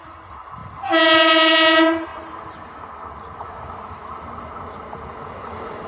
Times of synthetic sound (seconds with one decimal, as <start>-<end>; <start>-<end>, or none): none